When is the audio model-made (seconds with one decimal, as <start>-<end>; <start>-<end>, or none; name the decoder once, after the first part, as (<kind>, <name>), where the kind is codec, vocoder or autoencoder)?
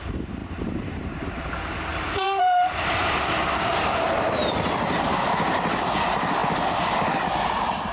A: 0.4-1.5 (vocoder, BigVGAN v2); 1.9-3.7